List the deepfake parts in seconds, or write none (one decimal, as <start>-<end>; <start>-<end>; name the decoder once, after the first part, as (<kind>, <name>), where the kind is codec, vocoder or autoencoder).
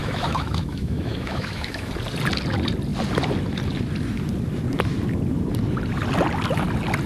0.0-1.9 (autoencoder, DAC-VAE)